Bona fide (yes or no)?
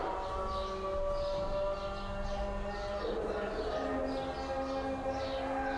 yes